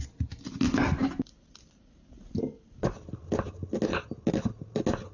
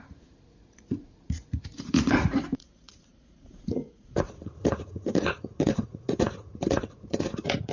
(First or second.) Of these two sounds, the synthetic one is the second